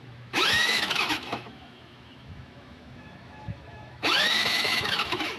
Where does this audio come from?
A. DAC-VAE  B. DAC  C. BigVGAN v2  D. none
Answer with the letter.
A